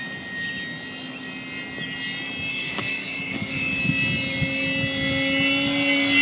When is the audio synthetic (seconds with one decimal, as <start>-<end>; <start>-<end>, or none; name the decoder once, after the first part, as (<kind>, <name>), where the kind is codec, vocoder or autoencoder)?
2.5-3.8 (codec, DAC)